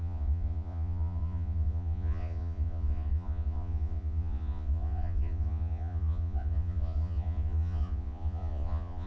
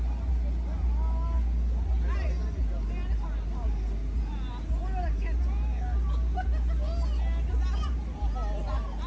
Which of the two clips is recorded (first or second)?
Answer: second